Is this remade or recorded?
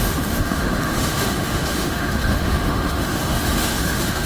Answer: remade